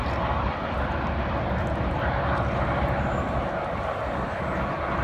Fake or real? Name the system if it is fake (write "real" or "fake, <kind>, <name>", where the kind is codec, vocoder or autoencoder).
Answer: real